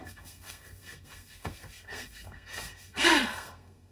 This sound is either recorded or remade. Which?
remade